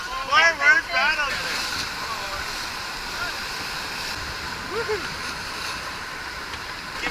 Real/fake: real